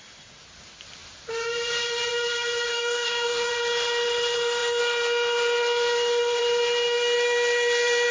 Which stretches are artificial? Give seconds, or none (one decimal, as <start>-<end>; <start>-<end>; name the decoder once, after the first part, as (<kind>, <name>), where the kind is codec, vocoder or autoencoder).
2.7-3.5 (codec, DAC)